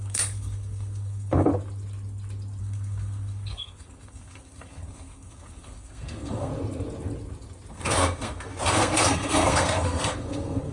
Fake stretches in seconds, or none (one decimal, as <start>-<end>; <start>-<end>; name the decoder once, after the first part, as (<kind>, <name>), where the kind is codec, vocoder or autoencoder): 0.0-1.5 (codec, SNAC); 2.6-6.5; 7.7-10.7